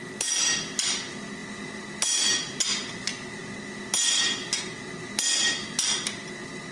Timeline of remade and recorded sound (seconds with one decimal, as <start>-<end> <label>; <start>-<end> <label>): 0.0-6.7 recorded